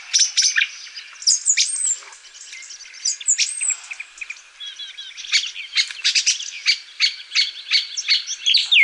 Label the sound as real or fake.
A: real